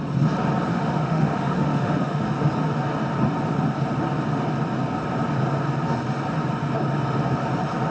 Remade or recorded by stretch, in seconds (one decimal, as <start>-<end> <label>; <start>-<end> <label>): 0.0-0.7 recorded; 0.7-2.2 remade; 2.2-7.9 recorded